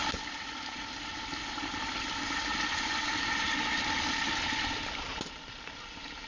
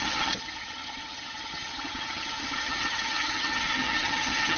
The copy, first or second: second